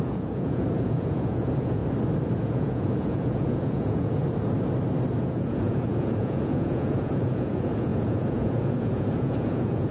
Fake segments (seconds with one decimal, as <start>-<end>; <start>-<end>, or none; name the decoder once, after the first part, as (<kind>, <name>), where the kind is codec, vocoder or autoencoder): 0.0-1.8 (vocoder, Vocos); 2.4-4.2; 5.2-9.9